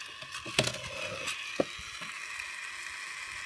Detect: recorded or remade recorded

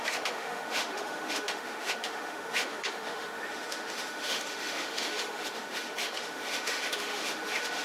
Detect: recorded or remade remade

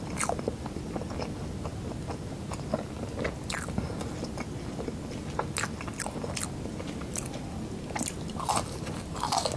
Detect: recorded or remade recorded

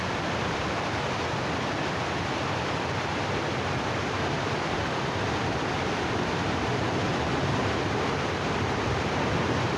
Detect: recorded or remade remade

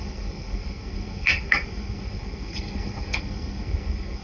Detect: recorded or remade remade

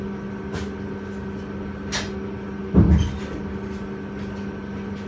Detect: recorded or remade recorded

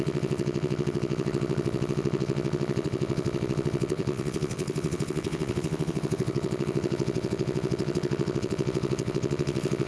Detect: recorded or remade remade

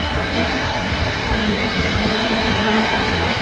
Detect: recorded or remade remade